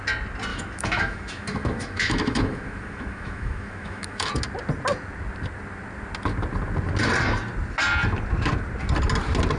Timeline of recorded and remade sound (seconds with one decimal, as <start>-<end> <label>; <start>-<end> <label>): 0.0-0.5 recorded; 0.5-4.3 remade; 4.3-9.6 recorded